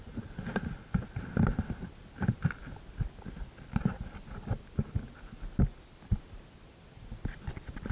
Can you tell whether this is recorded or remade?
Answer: recorded